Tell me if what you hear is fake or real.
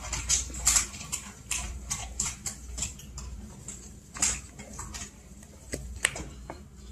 fake